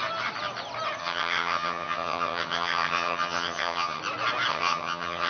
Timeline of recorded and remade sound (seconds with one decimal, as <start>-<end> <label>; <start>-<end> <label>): 0.0-1.0 recorded; 1.0-4.0 remade; 4.0-4.5 recorded; 4.5-5.3 remade